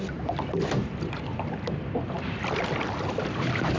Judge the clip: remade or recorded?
recorded